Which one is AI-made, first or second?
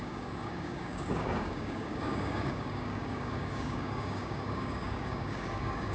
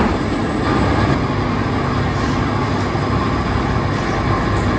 first